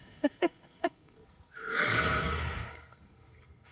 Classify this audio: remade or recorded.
remade